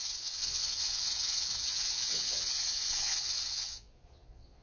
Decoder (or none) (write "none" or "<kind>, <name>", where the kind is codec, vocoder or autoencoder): vocoder, Vocos